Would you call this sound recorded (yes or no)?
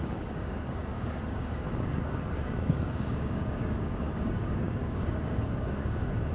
no